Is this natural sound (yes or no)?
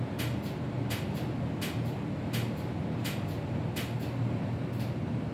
yes